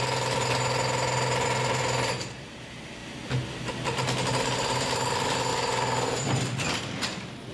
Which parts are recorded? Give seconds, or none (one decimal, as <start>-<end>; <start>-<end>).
0.0-7.5